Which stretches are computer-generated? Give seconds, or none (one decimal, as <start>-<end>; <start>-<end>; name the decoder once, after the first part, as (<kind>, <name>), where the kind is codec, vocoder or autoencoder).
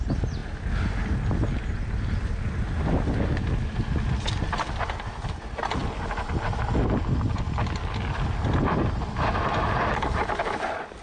none